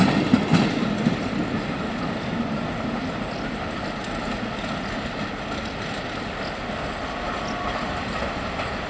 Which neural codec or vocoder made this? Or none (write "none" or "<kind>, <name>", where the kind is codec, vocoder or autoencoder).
none